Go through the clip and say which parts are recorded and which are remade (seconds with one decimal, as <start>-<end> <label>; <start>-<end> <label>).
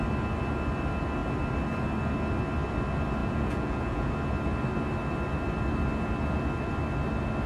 0.0-3.2 recorded; 3.2-4.1 remade; 4.1-7.5 recorded